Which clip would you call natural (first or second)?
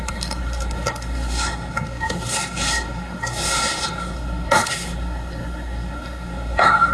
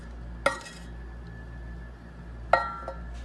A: second